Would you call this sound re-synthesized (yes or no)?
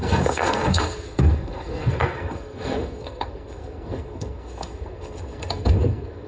yes